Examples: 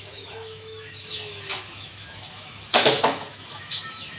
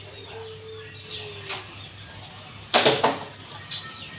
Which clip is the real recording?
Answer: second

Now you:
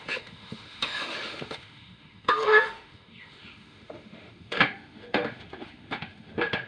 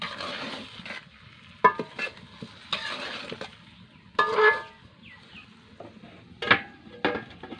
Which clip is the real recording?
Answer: second